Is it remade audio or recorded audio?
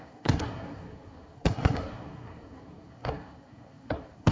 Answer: remade